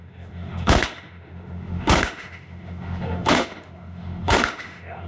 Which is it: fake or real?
fake